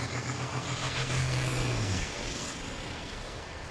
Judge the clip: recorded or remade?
remade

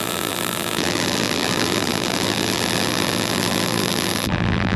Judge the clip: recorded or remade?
remade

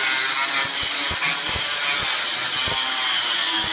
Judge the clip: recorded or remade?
recorded